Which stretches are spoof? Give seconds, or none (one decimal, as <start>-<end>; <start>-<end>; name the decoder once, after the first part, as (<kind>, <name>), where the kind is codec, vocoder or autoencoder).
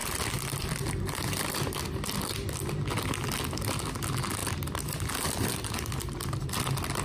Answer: 0.0-2.3 (vocoder, BigVGAN v2)